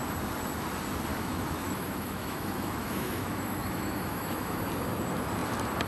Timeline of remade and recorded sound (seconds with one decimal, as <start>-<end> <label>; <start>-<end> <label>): 0.0-1.1 recorded; 1.1-4.6 remade; 4.6-5.9 recorded